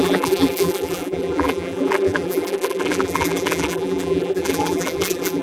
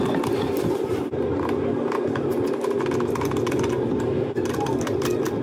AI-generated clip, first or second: first